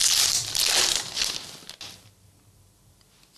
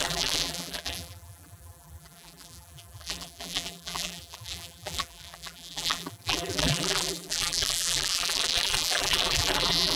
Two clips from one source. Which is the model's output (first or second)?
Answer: second